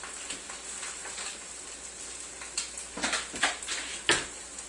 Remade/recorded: recorded